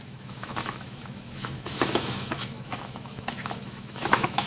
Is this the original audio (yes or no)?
no